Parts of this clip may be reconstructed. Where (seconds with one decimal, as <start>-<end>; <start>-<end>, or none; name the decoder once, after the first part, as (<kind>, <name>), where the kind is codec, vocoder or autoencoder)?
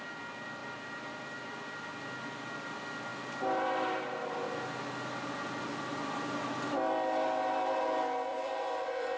0.6-1.8 (vocoder, BigVGAN v2); 8.3-9.2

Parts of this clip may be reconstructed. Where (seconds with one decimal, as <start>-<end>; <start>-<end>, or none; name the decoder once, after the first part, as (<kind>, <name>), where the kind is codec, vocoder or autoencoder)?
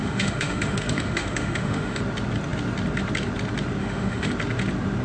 0.0-2.0 (autoencoder, DAC-VAE); 3.8-4.3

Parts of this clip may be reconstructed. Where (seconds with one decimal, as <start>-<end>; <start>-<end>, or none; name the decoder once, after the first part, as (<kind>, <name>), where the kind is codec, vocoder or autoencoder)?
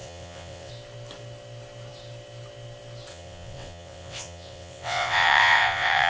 0.0-0.7 (vocoder, WaveNeXt); 3.1-6.1